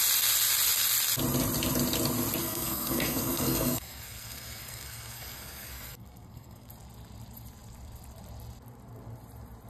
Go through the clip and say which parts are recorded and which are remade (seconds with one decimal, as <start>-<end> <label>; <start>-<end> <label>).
0.0-2.4 recorded; 2.4-6.7 remade; 6.7-9.7 recorded